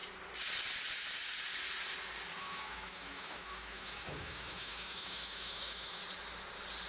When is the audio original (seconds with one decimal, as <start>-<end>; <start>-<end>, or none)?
0.0-2.4; 6.0-6.9